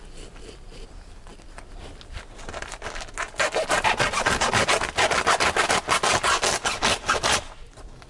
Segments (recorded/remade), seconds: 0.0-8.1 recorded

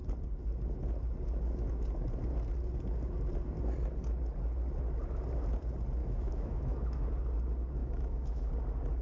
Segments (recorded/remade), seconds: 0.0-6.0 recorded; 6.0-7.1 remade; 7.1-7.8 recorded; 7.8-8.5 remade; 8.5-9.0 recorded